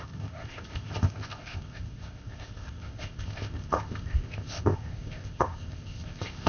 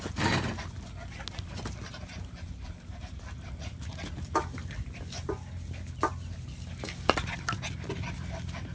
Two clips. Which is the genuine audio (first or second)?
second